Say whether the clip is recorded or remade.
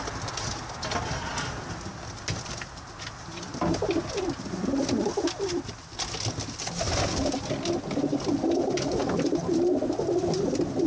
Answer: recorded